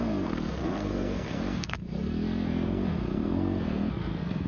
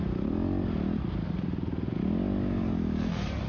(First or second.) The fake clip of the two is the first